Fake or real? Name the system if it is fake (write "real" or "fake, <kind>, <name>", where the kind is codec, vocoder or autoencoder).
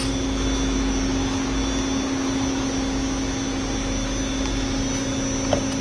real